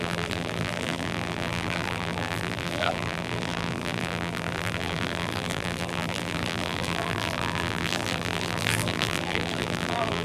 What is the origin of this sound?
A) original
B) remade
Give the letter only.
B